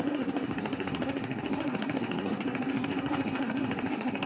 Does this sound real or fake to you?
fake